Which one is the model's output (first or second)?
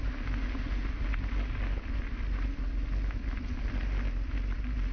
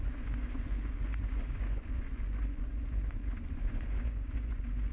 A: second